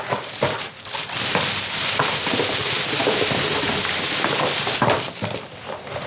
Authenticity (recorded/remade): remade